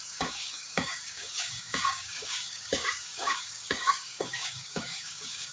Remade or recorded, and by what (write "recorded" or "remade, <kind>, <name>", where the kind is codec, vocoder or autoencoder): remade, codec, DAC